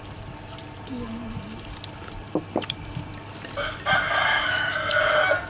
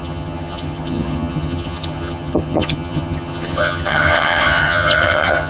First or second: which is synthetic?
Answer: second